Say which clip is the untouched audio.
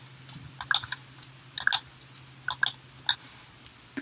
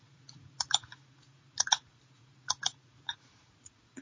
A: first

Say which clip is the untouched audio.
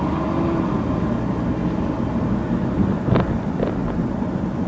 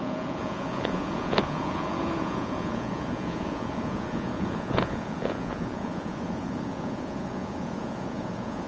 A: first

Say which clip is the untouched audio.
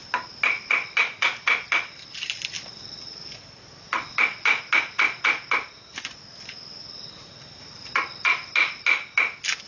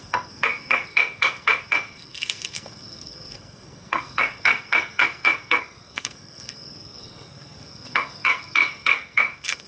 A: first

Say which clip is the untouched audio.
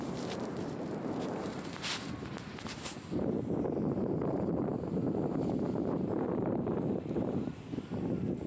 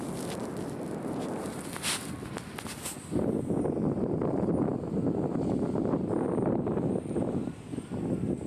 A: second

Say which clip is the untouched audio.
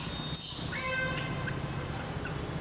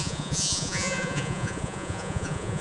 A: first